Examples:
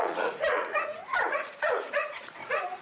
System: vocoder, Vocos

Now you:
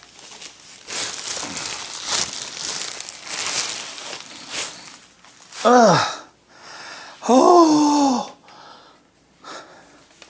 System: none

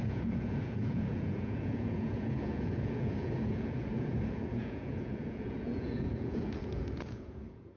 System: vocoder, Vocos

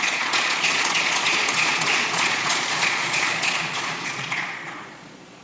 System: vocoder, Vocos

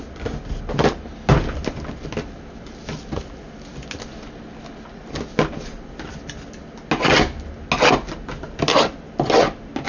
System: none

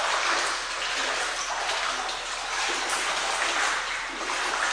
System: none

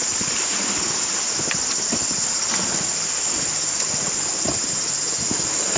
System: none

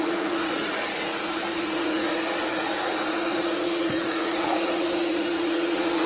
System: vocoder, Vocos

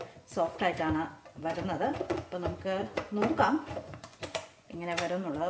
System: vocoder, Vocos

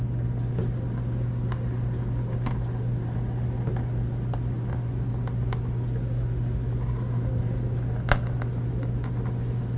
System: none